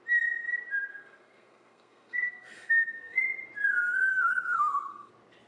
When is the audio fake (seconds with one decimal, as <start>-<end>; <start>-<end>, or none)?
0.9-3.2; 4.1-5.1